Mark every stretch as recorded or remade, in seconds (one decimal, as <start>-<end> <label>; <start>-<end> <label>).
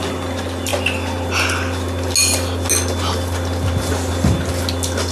0.0-5.1 recorded